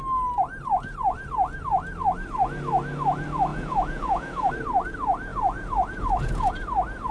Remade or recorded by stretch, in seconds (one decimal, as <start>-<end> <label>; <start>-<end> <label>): 0.0-3.5 recorded; 3.5-4.5 remade; 4.5-5.3 recorded; 5.3-6.5 remade; 6.5-7.1 recorded

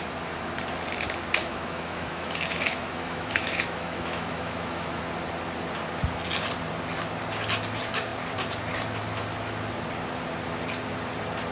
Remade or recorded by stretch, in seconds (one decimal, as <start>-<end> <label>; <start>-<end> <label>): 0.0-1.4 recorded; 1.4-5.0 remade; 5.0-11.5 recorded

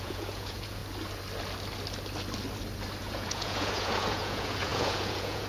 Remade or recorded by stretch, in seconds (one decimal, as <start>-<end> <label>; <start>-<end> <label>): 0.0-0.8 remade; 0.8-3.0 recorded; 3.0-5.5 remade

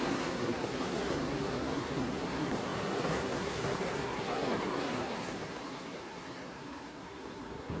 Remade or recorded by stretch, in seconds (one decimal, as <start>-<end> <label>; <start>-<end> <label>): 0.0-7.8 remade

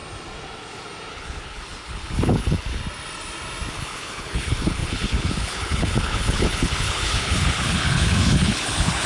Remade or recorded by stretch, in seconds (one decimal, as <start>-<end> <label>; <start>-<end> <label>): 0.0-1.1 recorded; 1.1-2.8 remade; 2.8-3.7 recorded; 3.7-9.1 remade